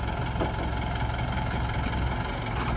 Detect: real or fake real